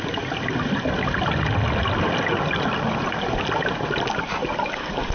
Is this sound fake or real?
real